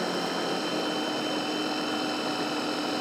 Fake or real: real